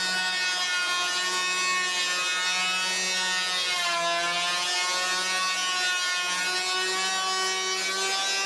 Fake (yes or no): no